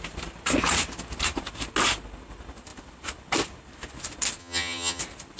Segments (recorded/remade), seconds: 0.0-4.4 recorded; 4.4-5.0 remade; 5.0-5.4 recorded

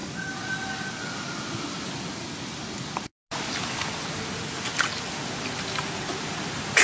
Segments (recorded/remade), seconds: 0.0-6.8 recorded